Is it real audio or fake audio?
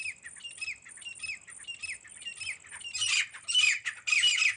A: real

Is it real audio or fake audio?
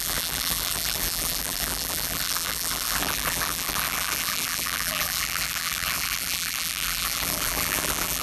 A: fake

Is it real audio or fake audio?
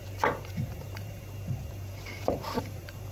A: fake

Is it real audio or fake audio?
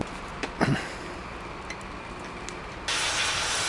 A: real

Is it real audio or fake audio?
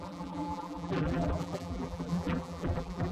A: fake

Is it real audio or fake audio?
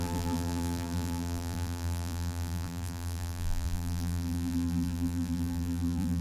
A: fake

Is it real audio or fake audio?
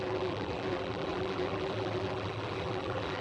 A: fake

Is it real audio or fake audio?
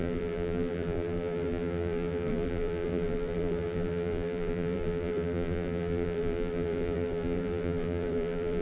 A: fake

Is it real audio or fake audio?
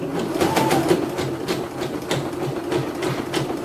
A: real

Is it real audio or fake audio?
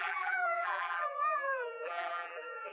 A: fake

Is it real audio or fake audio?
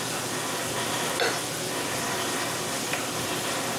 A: real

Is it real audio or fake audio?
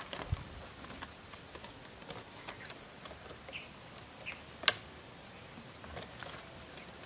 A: real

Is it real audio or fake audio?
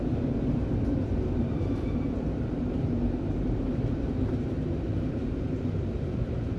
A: fake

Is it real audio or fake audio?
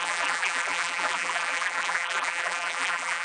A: fake